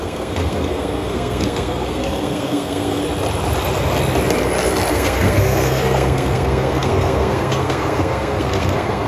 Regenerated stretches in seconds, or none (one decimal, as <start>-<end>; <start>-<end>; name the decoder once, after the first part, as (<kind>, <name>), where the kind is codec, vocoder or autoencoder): 0.0-3.0 (codec, SNAC); 4.9-9.1